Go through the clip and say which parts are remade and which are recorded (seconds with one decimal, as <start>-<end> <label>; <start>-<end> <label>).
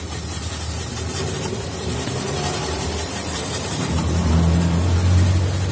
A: 0.0-0.9 recorded; 0.9-4.3 remade; 4.3-5.7 recorded